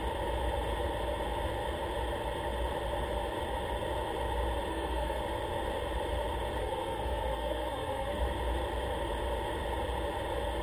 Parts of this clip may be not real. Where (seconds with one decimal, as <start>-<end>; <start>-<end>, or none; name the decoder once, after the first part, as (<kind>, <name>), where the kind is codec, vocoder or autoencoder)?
4.7-5.2 (codec, SNAC); 6.6-8.2